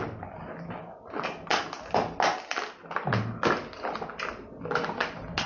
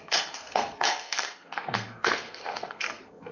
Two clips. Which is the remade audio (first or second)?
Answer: second